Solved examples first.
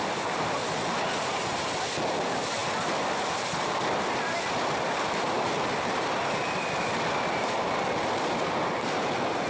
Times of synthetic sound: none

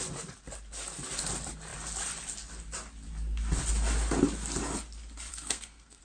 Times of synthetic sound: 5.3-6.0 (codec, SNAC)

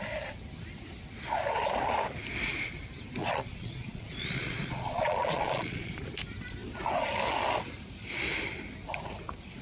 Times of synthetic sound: 3.2-6.0 (vocoder, Vocos)

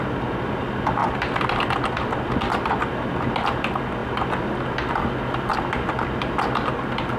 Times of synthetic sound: 1.0-1.6 (vocoder, BigVGAN v2)